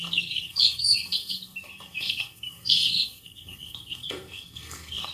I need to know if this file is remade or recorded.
remade